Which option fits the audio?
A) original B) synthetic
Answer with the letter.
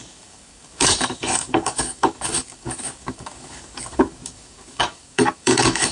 B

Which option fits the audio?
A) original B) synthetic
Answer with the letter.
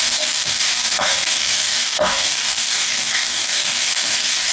B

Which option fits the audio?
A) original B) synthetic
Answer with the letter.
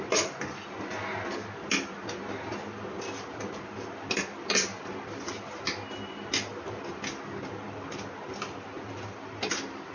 A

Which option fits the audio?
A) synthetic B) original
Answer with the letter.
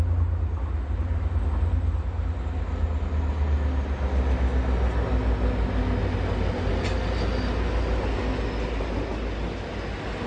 B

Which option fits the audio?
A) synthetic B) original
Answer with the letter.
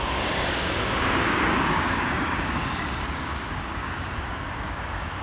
A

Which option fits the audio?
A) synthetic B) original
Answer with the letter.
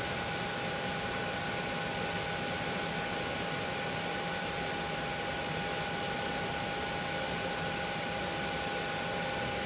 B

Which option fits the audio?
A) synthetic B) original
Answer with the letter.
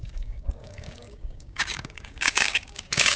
A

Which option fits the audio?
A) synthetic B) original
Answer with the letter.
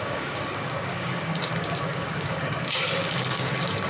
A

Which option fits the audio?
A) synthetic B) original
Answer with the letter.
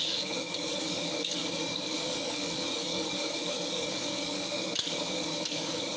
A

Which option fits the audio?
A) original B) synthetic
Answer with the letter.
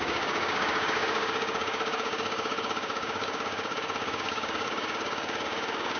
B